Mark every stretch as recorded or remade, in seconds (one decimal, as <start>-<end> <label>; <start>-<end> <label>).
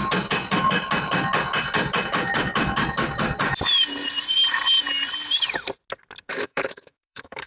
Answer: 0.0-6.3 recorded; 6.3-7.5 remade